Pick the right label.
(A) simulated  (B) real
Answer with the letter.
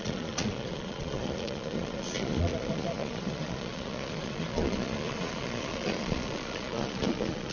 A